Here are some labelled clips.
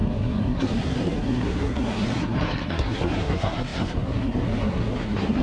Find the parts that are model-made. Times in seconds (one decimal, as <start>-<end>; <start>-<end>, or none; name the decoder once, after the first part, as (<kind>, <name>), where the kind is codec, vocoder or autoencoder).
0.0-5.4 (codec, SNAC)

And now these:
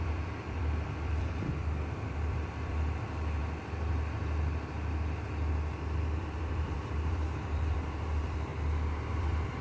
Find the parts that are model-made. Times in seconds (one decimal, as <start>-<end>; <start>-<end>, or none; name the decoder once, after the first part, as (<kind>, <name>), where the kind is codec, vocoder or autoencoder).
0.0-3.4 (vocoder, BigVGAN v2); 6.2-8.5; 9.1-9.6

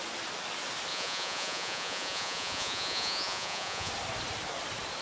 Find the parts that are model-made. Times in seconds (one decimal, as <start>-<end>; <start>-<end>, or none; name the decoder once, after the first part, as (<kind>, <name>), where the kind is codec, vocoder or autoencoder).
0.9-3.9 (vocoder, Vocos)

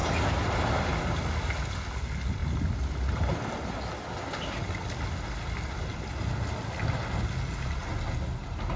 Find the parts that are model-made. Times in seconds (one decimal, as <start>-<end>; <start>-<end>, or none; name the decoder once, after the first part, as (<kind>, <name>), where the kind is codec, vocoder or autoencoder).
none